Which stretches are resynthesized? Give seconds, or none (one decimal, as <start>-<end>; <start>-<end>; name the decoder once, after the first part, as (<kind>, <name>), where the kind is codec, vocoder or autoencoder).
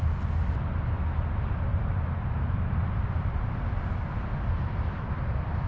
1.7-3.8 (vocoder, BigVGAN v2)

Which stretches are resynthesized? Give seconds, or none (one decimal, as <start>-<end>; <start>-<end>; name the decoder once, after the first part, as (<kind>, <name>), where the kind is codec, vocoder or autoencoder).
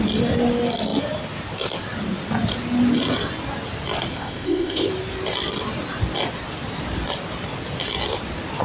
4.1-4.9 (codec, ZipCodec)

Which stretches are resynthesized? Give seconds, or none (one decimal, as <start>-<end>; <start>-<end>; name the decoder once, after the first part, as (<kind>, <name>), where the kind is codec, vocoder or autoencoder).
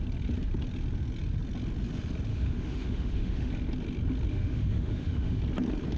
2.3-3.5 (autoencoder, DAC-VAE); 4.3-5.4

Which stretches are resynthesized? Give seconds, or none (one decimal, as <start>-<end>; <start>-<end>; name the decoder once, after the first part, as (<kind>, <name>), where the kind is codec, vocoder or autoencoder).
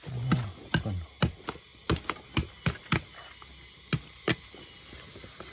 none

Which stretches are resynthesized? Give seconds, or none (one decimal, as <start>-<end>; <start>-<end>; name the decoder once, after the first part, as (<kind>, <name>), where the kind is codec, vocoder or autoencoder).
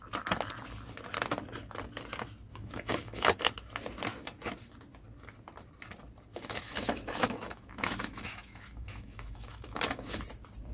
2.5-3.3 (autoencoder, DAC-VAE); 6.3-10.2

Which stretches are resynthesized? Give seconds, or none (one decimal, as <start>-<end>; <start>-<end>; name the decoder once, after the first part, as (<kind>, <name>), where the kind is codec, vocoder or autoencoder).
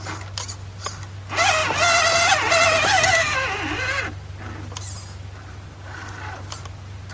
none